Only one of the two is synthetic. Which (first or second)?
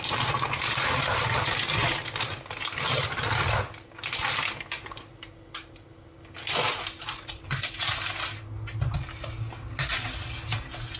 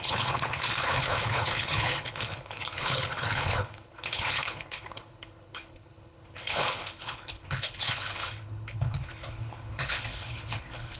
second